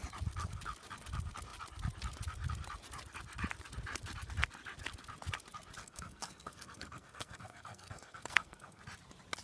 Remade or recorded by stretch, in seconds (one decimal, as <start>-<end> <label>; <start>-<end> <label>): 0.0-5.8 recorded; 5.8-8.8 remade; 8.8-9.4 recorded

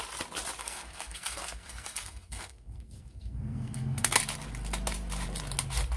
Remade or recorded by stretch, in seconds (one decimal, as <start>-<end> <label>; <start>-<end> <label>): 0.0-0.6 recorded; 0.6-4.2 remade; 4.2-6.0 recorded

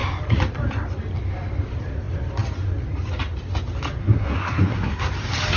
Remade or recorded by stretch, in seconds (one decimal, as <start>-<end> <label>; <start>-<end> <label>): 0.0-4.0 recorded; 4.0-5.1 remade; 5.1-5.6 recorded

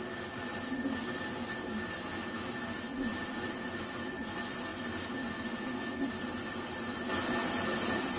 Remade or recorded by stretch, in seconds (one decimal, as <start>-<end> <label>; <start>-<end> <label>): 0.0-8.2 recorded

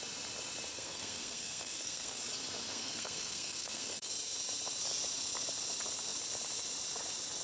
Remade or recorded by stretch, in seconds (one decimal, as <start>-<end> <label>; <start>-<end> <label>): 0.0-0.7 recorded; 0.7-2.2 remade; 2.2-2.7 recorded; 2.7-4.1 remade; 4.1-7.4 recorded

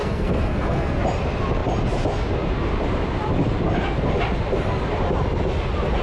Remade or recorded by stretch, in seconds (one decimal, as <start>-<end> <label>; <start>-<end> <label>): 0.0-1.0 remade; 1.0-6.0 recorded

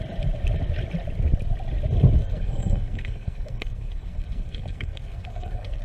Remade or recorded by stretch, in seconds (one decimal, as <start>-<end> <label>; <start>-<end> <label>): 0.0-2.2 recorded; 2.2-5.8 remade